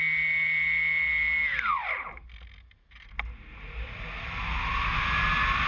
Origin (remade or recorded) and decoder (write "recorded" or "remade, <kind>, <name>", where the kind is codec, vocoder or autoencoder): recorded